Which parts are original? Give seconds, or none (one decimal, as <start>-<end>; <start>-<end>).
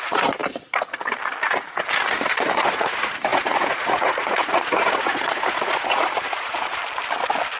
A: 0.4-2.4; 6.8-7.6